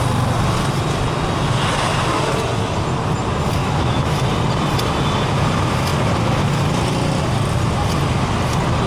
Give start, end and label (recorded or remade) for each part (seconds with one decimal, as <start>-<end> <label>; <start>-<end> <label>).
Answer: 0.0-3.6 recorded; 3.6-4.2 remade; 4.2-8.9 recorded